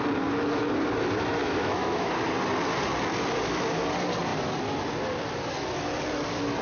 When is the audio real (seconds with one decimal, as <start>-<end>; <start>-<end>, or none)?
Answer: 0.0-1.4; 2.1-6.6